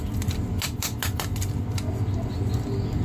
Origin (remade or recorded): recorded